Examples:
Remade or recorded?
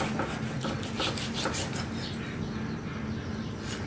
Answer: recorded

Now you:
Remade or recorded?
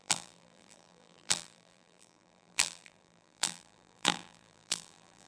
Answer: remade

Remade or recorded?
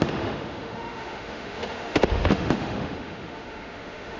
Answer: remade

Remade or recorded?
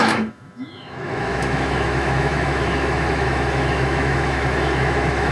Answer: remade